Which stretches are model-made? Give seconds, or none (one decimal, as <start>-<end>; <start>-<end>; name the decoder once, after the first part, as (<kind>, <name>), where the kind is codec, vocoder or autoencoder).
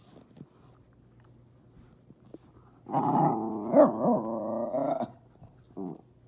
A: none